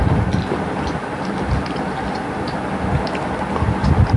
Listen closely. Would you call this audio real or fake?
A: real